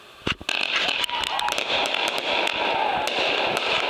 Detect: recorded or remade recorded